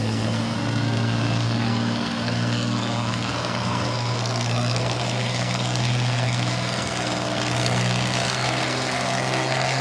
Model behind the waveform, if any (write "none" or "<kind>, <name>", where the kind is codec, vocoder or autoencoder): codec, SNAC